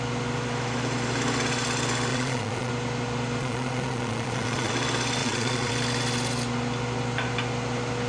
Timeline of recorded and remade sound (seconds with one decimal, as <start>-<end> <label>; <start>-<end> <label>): 0.0-2.1 recorded; 2.1-2.7 remade; 2.7-3.4 recorded; 3.4-4.7 remade; 4.7-5.2 recorded; 5.2-5.7 remade; 5.7-8.1 recorded